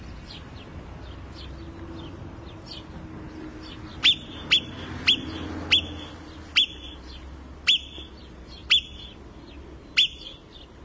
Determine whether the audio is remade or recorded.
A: recorded